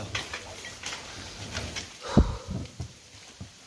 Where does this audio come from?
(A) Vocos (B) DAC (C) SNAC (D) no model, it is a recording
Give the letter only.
D